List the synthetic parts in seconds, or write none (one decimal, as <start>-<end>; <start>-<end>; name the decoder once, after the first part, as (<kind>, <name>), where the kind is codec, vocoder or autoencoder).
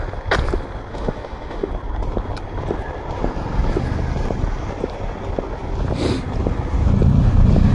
0.9-1.7 (autoencoder, DAC-VAE)